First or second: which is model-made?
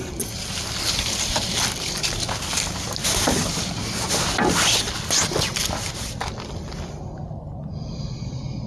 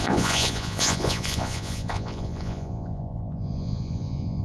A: second